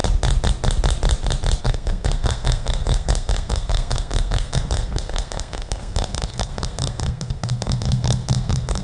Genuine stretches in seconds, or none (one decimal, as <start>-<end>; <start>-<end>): 0.0-1.6